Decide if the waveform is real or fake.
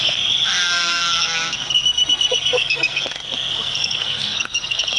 fake